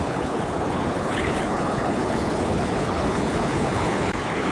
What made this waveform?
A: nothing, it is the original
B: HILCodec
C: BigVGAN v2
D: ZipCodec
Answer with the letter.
B